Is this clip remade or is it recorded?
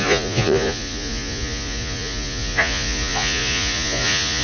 remade